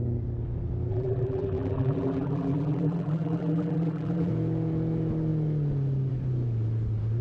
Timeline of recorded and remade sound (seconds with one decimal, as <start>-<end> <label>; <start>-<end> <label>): 0.0-0.9 recorded; 0.9-4.3 remade; 4.3-7.2 recorded